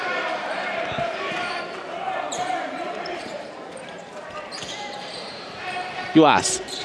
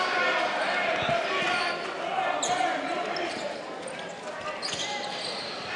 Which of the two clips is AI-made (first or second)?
first